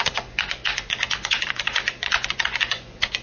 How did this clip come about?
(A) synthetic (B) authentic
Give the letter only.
A